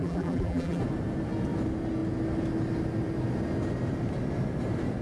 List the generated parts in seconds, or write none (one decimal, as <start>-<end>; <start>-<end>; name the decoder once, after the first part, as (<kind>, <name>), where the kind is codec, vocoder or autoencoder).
0.0-0.8 (vocoder, BigVGAN v2)